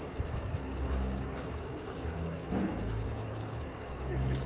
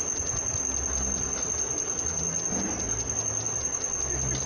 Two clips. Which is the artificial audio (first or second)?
first